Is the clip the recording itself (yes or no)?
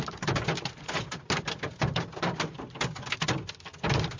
yes